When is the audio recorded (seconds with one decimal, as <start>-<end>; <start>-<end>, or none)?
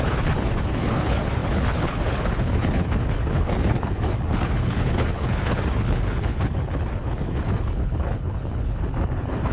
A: none